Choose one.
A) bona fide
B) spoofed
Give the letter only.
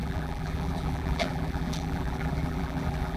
B